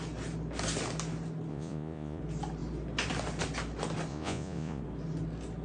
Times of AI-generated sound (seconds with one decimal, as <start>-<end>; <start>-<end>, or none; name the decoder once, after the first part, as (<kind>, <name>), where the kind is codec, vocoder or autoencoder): 1.5-2.2 (vocoder, Vocos); 4.1-4.8